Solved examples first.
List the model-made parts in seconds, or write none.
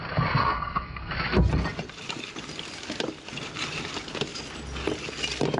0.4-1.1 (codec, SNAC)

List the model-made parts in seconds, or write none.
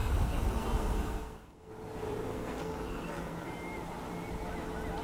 0.0-1.7 (codec, SNAC); 2.3-3.5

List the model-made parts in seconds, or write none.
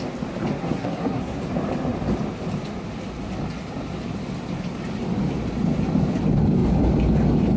0.6-1.4 (codec, SNAC)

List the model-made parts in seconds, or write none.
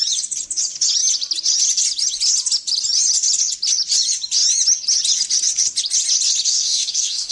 6.5-7.3 (codec, SNAC)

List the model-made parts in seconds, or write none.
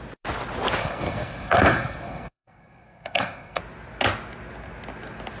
0.8-3.6 (codec, SNAC)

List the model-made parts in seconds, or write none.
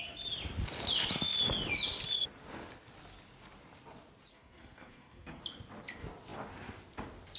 4.3-5.4 (codec, SNAC)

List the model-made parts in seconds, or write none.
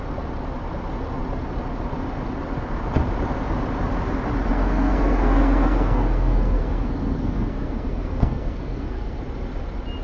4.5-9.2 (codec, SNAC)